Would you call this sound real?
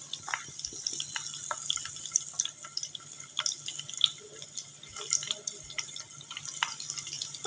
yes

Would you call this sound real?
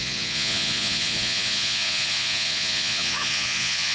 no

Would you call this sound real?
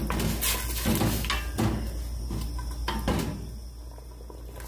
yes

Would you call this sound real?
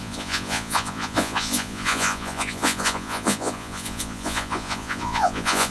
no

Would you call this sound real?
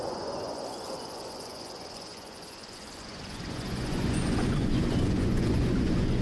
no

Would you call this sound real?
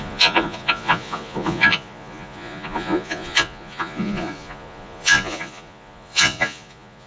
no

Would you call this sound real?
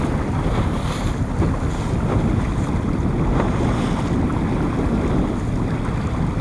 yes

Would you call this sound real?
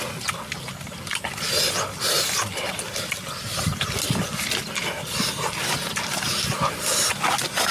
yes